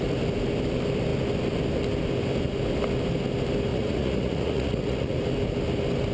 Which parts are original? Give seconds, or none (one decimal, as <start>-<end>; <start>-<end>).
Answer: 0.0-3.7; 5.2-6.1